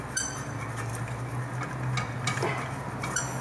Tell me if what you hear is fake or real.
real